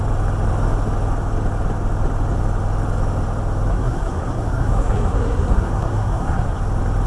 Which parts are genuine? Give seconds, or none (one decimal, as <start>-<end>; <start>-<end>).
0.0-3.7; 6.6-7.1